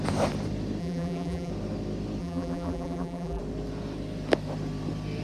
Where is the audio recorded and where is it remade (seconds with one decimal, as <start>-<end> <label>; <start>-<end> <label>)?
0.0-0.8 recorded; 0.8-1.5 remade; 1.5-2.2 recorded; 2.2-3.4 remade; 3.4-5.2 recorded